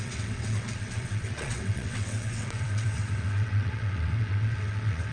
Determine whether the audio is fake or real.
fake